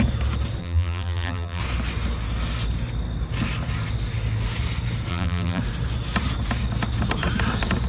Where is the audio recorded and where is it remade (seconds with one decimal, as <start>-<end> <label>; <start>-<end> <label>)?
0.0-0.6 recorded; 0.6-1.6 remade; 1.6-5.1 recorded; 5.1-5.6 remade; 5.6-7.9 recorded